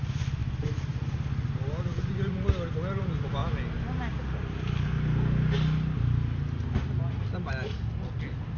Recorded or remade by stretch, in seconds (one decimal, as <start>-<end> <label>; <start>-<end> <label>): 0.0-8.6 recorded